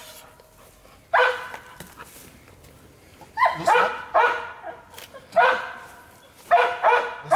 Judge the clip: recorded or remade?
recorded